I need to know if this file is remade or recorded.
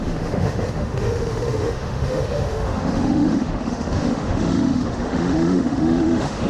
remade